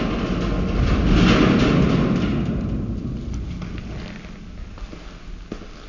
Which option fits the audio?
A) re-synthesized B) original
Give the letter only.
B